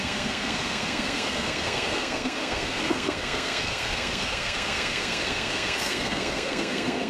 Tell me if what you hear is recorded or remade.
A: remade